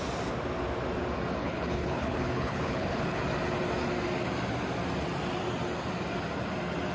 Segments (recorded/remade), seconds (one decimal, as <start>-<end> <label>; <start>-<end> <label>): 0.0-1.4 recorded; 1.4-3.2 remade; 3.2-6.9 recorded